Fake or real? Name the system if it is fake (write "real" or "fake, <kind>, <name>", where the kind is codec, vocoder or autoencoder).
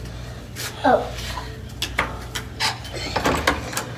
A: real